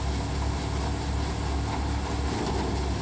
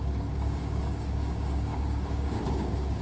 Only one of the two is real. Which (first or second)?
first